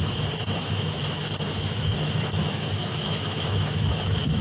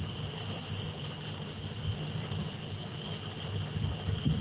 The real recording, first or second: second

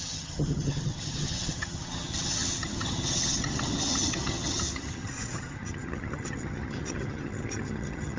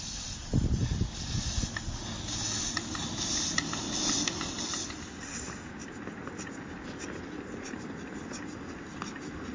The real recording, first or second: second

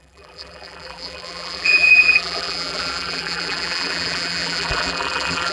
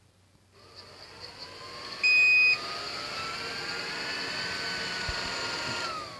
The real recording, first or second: second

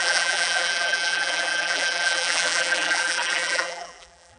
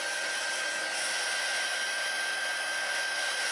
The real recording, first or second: second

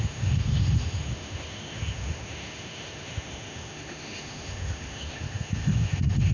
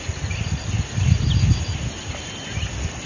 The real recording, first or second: second